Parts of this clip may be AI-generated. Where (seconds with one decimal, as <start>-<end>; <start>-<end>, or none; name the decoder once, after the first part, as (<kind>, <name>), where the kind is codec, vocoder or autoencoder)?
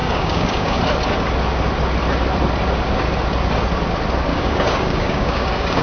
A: 0.0-0.8 (codec, DAC); 4.3-5.8